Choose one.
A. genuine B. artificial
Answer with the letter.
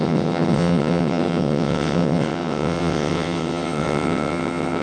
B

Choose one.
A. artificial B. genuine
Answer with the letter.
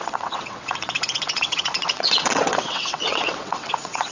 A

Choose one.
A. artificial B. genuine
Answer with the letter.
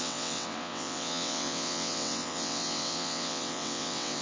A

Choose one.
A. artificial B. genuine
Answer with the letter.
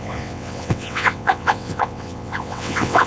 A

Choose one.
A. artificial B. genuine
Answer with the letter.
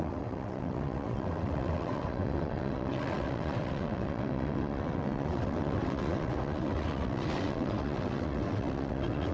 A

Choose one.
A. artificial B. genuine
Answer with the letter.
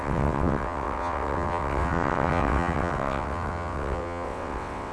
A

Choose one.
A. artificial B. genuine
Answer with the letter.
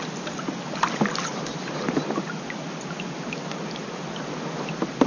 B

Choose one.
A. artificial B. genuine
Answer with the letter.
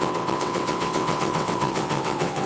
A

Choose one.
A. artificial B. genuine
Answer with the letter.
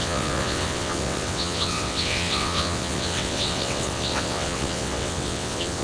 A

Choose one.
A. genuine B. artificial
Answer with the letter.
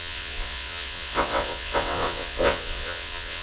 B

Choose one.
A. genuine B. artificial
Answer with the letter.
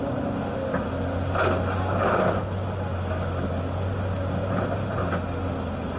A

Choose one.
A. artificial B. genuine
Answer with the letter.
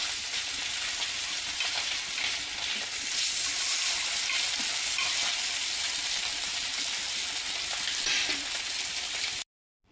B